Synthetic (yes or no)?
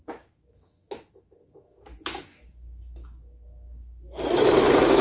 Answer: yes